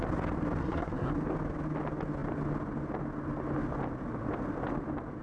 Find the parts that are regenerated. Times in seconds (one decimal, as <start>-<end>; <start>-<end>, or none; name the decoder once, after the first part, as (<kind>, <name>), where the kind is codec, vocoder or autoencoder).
0.6-1.1 (codec, SNAC)